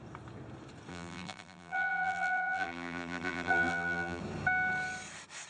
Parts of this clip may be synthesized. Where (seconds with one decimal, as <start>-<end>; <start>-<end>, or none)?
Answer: 0.9-4.2